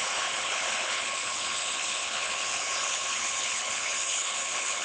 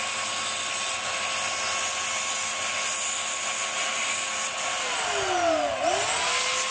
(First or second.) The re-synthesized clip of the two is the first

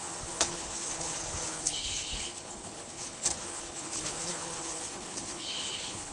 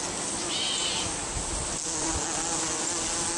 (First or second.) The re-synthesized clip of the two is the first